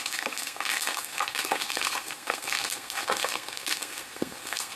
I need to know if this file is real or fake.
fake